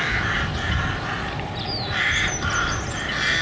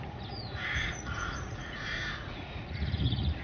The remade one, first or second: second